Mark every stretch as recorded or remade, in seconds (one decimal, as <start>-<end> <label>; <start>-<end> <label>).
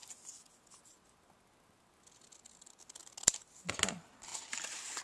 0.0-4.3 recorded; 4.3-5.0 remade